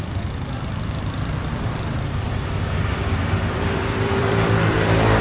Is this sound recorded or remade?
remade